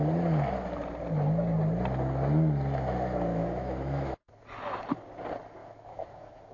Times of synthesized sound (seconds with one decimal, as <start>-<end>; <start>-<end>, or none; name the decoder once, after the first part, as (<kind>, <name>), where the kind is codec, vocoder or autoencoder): 3.3-4.3 (autoencoder, DAC-VAE); 5.6-6.5